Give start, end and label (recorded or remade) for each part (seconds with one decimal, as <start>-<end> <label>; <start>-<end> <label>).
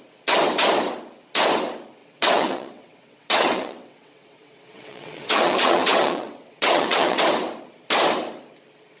0.0-2.0 recorded; 2.0-7.2 remade; 7.2-9.0 recorded